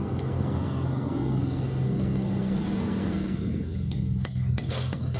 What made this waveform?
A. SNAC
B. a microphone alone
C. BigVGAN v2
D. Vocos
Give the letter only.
A